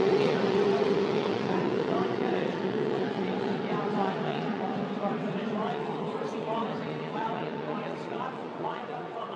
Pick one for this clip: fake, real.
fake